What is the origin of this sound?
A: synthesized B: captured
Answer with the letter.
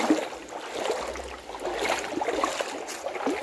B